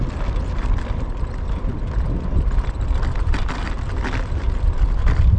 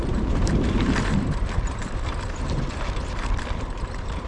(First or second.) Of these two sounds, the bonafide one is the first